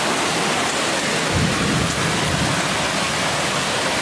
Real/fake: real